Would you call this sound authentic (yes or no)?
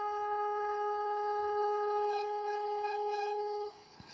no